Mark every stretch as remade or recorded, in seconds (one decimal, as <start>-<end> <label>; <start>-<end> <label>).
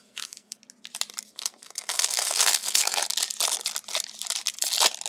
0.0-0.6 remade; 0.6-1.2 recorded; 1.2-3.0 remade; 3.0-5.1 recorded